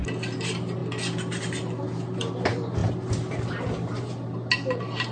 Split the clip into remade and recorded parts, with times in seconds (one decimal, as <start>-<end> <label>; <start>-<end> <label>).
0.0-5.1 recorded